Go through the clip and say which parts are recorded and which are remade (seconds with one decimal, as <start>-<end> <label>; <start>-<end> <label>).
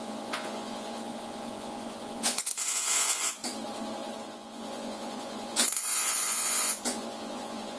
0.0-3.4 remade; 3.4-4.3 recorded; 4.3-7.8 remade